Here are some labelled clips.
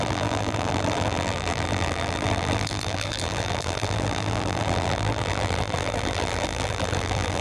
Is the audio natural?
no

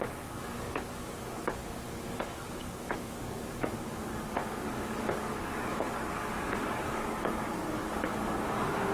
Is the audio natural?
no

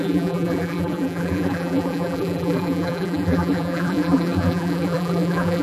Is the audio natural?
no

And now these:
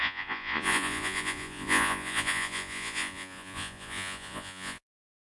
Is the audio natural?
no